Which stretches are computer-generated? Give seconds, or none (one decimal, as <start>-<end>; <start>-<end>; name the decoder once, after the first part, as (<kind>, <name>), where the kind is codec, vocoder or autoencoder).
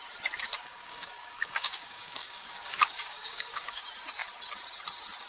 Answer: 0.6-3.8 (codec, DAC)